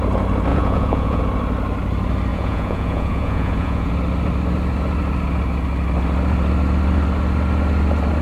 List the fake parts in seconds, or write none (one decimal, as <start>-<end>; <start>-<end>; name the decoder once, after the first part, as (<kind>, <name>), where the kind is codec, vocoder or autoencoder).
0.5-1.2 (vocoder, Vocos); 2.3-3.9

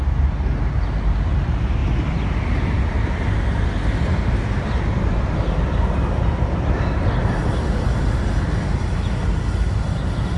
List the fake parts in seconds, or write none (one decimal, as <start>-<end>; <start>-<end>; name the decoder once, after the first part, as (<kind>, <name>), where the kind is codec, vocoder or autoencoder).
none

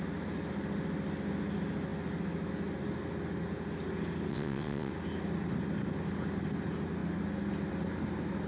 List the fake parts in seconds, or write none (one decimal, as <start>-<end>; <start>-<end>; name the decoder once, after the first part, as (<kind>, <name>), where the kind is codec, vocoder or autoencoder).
4.3-4.9 (vocoder, WaveNeXt)

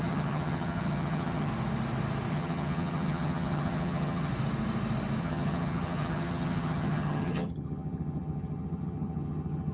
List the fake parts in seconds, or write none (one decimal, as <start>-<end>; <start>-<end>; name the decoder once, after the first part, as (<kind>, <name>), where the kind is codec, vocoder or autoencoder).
0.0-1.5 (vocoder, HiFi-GAN); 2.3-4.3; 5.2-9.7

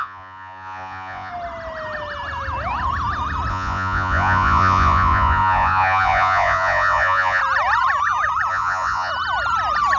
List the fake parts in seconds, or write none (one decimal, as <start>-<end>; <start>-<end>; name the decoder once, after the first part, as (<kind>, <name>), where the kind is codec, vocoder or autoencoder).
0.0-1.3 (vocoder, Vocos); 3.5-7.4; 8.5-9.1

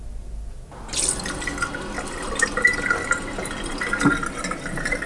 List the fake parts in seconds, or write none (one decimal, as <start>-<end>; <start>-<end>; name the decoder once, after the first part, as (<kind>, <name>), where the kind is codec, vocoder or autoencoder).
none